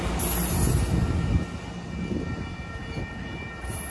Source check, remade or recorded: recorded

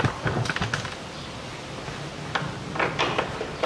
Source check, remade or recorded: recorded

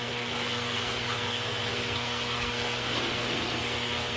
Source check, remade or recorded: remade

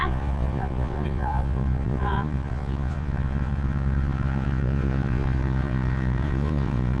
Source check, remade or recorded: remade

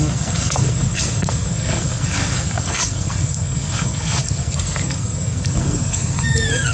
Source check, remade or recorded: remade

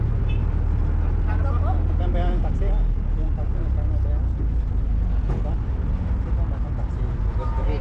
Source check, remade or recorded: recorded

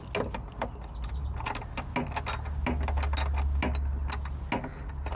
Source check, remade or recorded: recorded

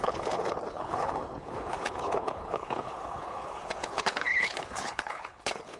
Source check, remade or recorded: remade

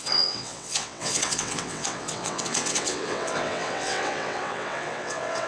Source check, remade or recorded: remade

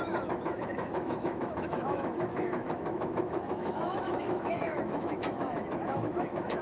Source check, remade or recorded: remade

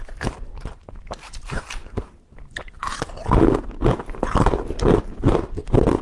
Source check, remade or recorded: recorded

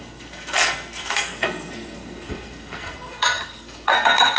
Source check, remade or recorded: remade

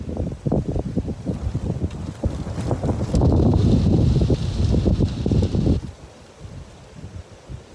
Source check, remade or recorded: recorded